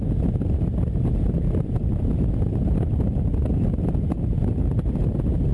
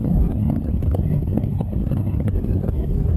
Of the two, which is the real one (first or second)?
first